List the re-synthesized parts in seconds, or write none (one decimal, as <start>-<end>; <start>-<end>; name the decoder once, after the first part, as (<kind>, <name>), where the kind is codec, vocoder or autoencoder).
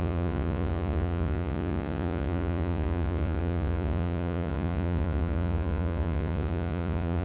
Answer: 0.0-7.2 (vocoder, Vocos)